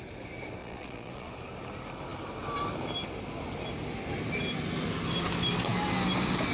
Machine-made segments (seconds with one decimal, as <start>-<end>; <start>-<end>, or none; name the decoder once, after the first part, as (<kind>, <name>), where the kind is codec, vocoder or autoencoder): 0.6-1.3 (vocoder, Vocos)